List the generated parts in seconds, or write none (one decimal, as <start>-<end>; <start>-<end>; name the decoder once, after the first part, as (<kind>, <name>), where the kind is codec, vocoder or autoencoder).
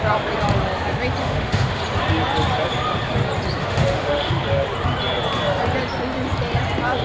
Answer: 1.2-1.8 (autoencoder, DAC-VAE); 3.6-4.3